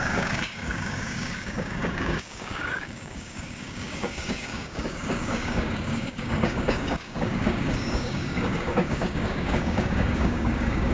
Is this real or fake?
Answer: fake